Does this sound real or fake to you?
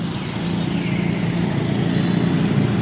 real